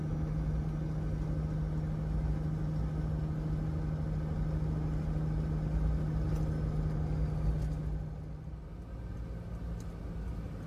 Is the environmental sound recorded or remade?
recorded